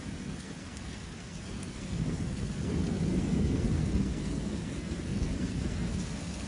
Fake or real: fake